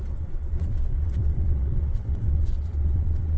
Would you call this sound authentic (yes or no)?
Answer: no